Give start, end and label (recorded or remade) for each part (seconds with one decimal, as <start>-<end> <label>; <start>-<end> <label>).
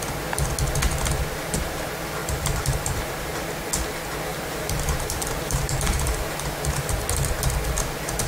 0.0-2.2 recorded; 2.2-3.5 remade; 3.5-4.3 recorded; 4.3-6.6 remade; 6.6-8.3 recorded